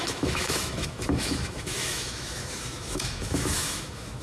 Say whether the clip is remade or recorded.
remade